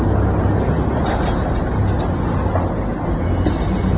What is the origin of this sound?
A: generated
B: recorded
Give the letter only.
B